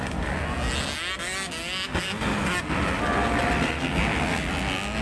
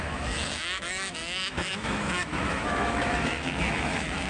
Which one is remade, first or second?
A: second